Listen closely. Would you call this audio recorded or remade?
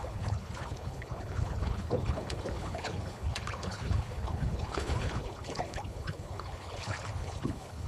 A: remade